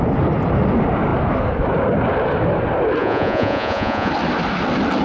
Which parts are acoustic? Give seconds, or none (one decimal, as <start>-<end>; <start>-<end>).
0.0-3.0; 4.1-5.0

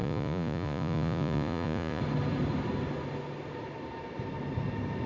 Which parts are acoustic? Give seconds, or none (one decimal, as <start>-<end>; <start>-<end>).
2.0-5.1

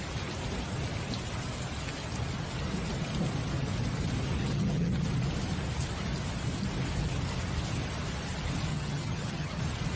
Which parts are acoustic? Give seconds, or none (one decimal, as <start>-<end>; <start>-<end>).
0.0-4.4; 4.9-8.7; 9.6-10.0